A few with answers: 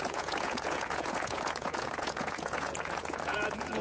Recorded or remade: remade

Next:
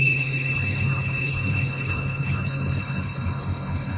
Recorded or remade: remade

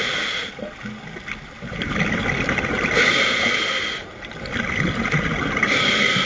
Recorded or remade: recorded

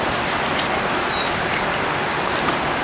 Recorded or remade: recorded